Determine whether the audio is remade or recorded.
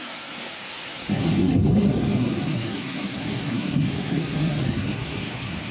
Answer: remade